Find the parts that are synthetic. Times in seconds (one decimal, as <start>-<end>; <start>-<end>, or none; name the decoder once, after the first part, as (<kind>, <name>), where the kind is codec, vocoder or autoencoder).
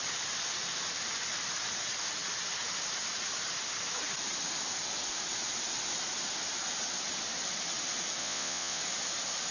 8.2-8.8 (vocoder, Vocos)